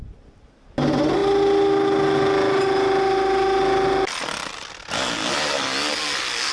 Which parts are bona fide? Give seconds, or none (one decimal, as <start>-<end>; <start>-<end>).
0.0-6.5